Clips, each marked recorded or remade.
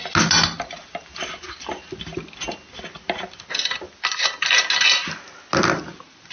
recorded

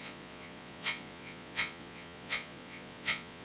remade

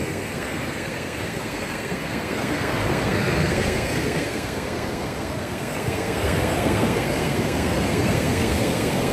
remade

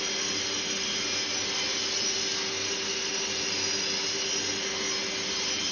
recorded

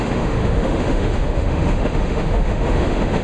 remade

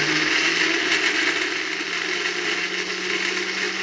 recorded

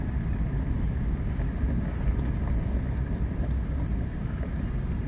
recorded